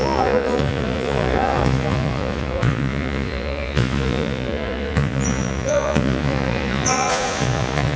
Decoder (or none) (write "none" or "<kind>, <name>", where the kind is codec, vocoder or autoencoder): vocoder, Vocos